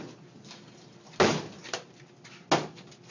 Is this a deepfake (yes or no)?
no